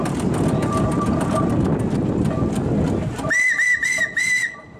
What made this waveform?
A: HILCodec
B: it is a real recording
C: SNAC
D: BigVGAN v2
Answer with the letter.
D